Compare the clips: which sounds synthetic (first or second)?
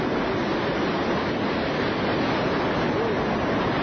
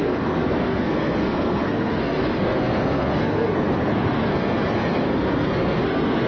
second